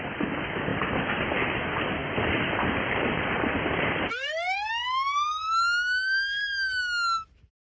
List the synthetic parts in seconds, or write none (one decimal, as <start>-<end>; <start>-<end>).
0.7-1.4; 2.0-4.7